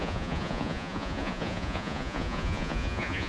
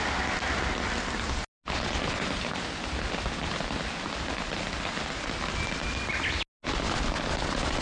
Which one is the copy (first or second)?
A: first